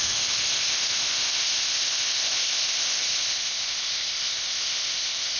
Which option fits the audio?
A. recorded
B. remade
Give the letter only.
B